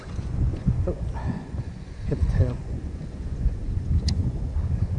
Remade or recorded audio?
remade